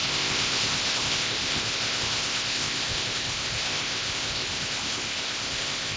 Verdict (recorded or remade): remade